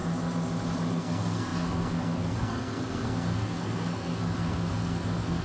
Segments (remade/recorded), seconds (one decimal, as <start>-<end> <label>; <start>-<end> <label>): 0.0-0.9 recorded; 0.9-5.4 remade